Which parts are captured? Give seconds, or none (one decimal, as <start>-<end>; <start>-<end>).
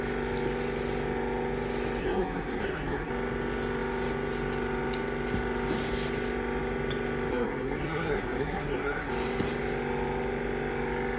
0.0-2.0; 3.1-7.3; 9.1-11.2